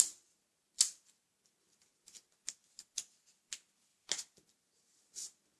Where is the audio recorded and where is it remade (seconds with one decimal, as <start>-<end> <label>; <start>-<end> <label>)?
0.0-5.6 recorded